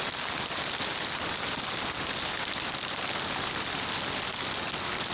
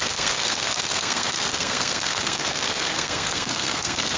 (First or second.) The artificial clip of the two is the second